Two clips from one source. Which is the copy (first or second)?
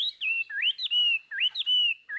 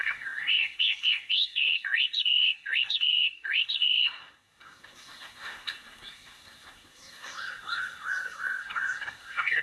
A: second